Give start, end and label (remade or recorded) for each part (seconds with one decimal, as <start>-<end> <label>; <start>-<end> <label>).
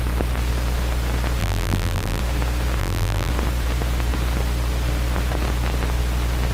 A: 0.0-1.4 recorded; 1.4-2.2 remade; 2.2-2.8 recorded; 2.8-3.3 remade; 3.3-6.5 recorded